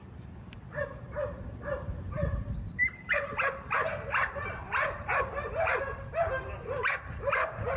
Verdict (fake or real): fake